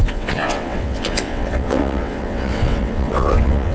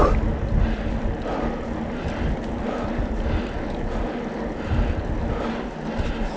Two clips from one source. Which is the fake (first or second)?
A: first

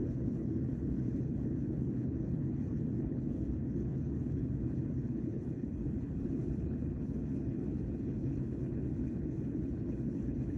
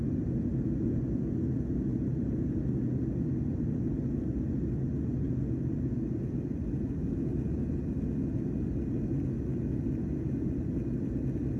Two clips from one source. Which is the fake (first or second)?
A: first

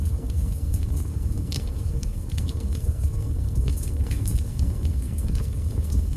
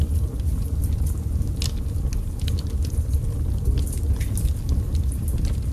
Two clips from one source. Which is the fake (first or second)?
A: first